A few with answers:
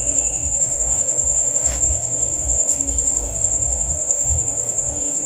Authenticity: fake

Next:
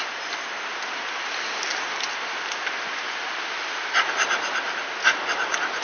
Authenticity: real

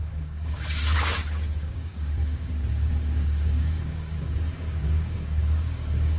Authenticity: fake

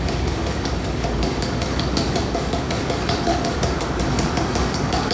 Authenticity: fake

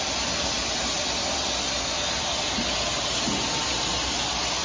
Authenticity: real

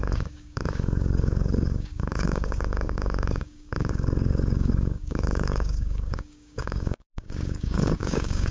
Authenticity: fake